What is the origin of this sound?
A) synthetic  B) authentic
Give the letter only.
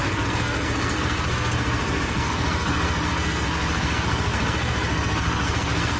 A